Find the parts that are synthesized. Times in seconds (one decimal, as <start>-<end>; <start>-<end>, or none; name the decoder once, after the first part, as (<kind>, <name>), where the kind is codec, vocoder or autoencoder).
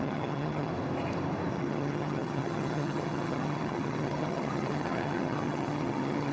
0.0-0.7 (vocoder, HiFi-GAN); 1.5-6.3